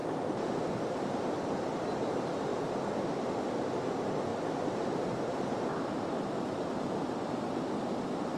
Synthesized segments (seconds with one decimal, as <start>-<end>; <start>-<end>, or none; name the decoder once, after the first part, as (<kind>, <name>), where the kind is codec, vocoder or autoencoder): 0.0-2.5 (vocoder, BigVGAN v2); 3.8-4.3; 6.0-8.4